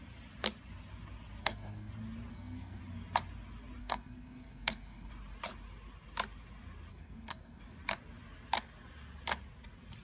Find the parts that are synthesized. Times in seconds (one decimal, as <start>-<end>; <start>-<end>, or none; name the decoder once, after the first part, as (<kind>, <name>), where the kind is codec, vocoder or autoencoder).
1.4-1.9 (codec, SNAC); 2.3-2.8; 3.8-5.1; 6.9-7.6